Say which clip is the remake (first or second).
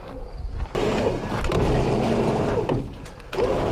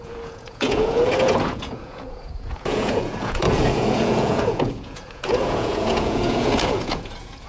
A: second